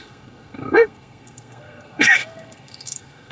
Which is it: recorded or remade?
remade